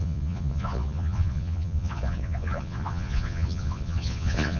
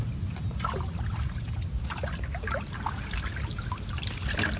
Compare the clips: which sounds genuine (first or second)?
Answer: second